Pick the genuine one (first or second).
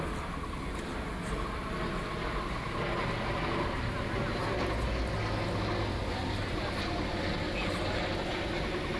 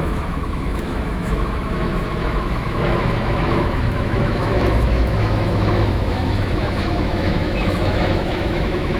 first